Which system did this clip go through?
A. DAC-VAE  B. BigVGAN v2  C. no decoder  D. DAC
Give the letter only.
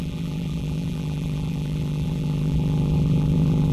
B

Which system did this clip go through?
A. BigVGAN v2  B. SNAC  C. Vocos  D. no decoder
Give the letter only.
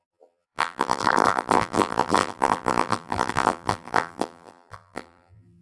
A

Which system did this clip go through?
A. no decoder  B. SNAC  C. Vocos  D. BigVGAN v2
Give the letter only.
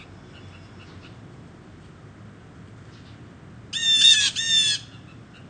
A